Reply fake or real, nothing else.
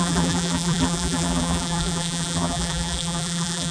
fake